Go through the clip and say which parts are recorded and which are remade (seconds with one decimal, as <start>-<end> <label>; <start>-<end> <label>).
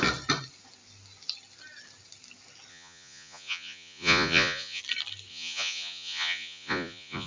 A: 0.0-2.7 recorded; 2.7-4.8 remade; 4.8-5.3 recorded; 5.3-7.3 remade